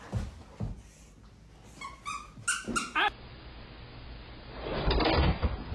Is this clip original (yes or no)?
yes